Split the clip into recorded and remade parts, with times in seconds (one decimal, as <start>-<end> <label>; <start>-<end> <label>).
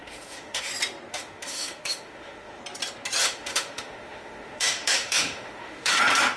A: 0.0-0.7 remade; 0.7-1.1 recorded; 1.1-2.6 remade; 2.6-3.2 recorded; 3.2-6.0 remade; 6.0-6.4 recorded